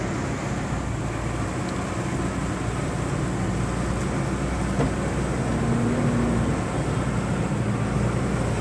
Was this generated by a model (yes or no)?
no